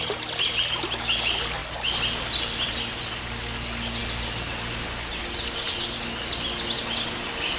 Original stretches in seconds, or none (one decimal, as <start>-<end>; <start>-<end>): 0.0-7.6